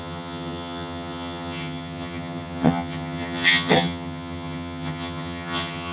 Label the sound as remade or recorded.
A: remade